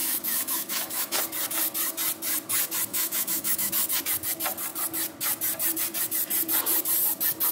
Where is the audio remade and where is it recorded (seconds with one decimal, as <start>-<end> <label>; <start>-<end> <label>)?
0.0-1.2 remade; 1.2-2.9 recorded; 2.9-3.7 remade; 3.7-7.5 recorded

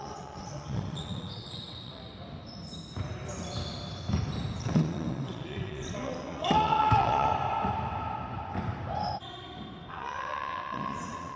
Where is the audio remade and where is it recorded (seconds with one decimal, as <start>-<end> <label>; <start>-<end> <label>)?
0.0-2.0 remade; 2.0-4.6 recorded; 4.6-7.3 remade; 7.3-9.9 recorded; 9.9-11.4 remade

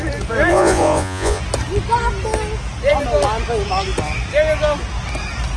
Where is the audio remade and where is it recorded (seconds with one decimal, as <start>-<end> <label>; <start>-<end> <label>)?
0.0-0.5 recorded; 0.5-1.4 remade; 1.4-5.6 recorded

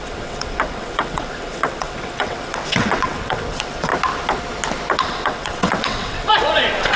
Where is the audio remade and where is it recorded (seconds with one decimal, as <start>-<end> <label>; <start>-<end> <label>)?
0.0-3.9 remade; 3.9-4.9 recorded; 4.9-7.0 remade